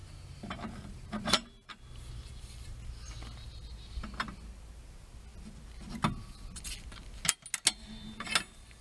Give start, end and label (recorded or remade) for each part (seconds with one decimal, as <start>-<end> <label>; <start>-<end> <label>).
0.0-2.5 remade; 2.5-8.8 recorded